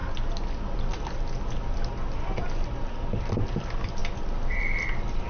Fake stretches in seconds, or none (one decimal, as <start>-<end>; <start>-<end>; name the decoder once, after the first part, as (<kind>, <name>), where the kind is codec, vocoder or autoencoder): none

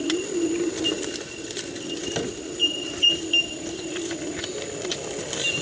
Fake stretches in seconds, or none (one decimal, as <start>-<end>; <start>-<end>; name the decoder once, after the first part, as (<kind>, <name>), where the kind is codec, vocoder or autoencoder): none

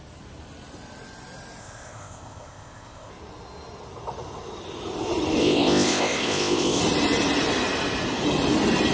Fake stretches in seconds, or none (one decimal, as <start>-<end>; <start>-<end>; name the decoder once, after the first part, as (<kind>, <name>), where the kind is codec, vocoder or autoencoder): 1.6-3.1 (codec, ZipCodec); 5.4-6.8

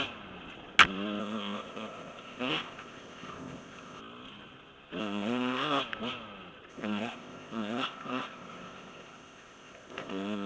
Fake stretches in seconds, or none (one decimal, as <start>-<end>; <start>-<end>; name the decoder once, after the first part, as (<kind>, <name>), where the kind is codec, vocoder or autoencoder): 1.2-4.0 (codec, ZipCodec); 5.0-5.8; 6.7-10.5

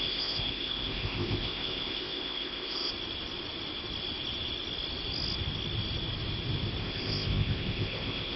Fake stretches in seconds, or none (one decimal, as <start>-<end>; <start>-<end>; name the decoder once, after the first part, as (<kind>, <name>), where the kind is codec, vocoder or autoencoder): 0.0-2.9 (codec, ZipCodec); 6.8-8.4